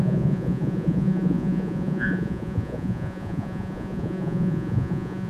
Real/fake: fake